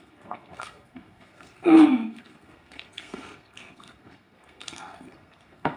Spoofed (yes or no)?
yes